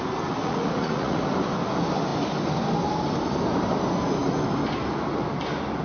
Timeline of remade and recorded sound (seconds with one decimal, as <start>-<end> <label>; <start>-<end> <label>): 0.0-0.4 recorded; 0.4-1.2 remade; 1.2-5.8 recorded